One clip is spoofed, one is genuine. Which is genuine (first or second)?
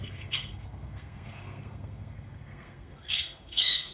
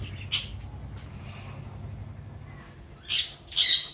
second